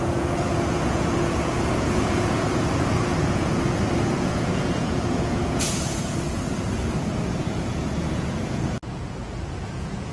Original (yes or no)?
no